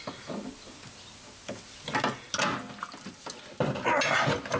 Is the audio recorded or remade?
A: recorded